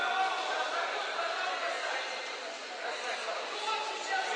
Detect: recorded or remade recorded